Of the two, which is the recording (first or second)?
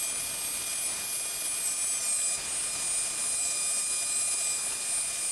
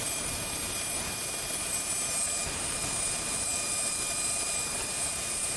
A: first